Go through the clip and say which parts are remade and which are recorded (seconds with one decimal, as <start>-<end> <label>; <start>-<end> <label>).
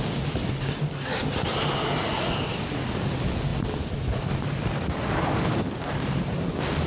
0.0-3.5 recorded; 3.5-6.1 remade; 6.1-6.9 recorded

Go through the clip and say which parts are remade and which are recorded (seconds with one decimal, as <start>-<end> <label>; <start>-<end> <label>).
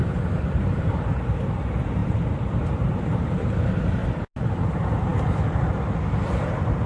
0.0-4.0 remade; 4.0-4.5 recorded; 4.5-6.9 remade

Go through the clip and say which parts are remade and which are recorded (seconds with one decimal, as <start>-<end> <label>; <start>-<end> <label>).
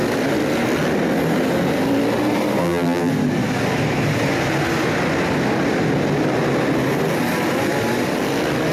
0.0-2.6 recorded; 2.6-3.1 remade; 3.1-8.7 recorded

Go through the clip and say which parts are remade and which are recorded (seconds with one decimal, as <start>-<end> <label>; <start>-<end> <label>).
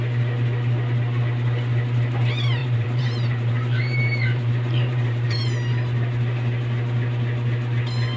0.0-2.6 recorded; 2.6-5.4 remade; 5.4-8.2 recorded